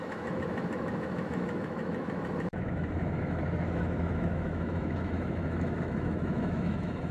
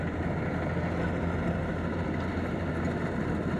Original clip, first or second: second